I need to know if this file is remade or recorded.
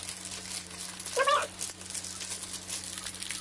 recorded